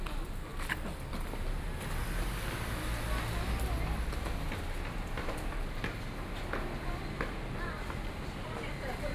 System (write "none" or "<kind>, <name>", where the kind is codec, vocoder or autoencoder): none